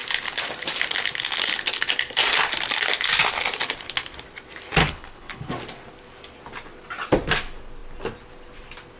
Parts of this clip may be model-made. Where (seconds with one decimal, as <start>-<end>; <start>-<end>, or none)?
4.8-5.5